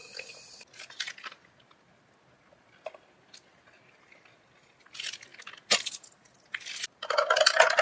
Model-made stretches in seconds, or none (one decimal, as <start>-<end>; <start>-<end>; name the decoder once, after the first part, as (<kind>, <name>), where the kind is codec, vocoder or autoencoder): none